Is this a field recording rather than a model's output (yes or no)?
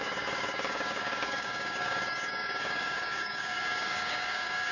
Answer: no